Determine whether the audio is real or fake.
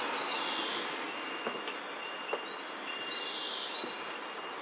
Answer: real